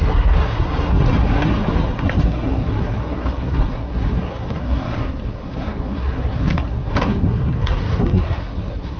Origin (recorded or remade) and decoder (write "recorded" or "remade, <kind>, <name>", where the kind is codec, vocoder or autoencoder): remade, codec, SNAC